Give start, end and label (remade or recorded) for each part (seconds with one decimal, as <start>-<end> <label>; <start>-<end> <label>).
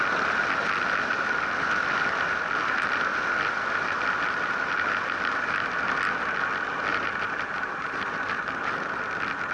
0.0-6.9 recorded; 6.9-9.0 remade; 9.0-9.5 recorded